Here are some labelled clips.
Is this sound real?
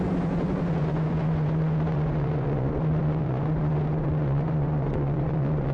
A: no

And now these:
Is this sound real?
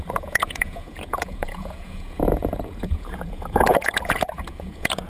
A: no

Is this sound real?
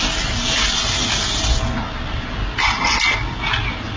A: yes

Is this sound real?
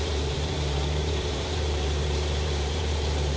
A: no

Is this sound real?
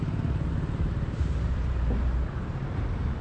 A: no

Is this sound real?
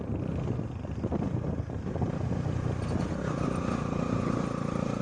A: yes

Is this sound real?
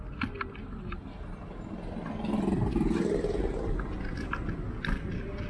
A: yes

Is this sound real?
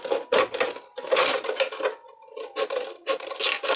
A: yes